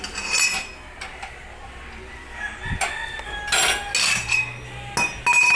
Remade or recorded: recorded